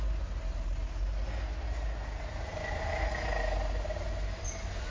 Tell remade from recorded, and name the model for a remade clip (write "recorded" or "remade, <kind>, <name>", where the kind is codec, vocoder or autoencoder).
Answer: recorded